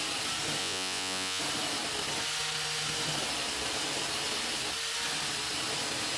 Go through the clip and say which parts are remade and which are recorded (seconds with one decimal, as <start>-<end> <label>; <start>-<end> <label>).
0.0-0.6 recorded; 0.6-1.4 remade; 1.4-6.2 recorded